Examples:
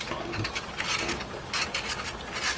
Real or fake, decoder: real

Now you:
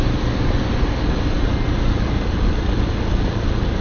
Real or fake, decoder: real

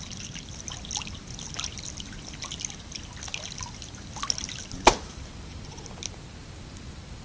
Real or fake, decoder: real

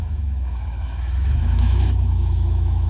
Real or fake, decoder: fake, autoencoder, DAC-VAE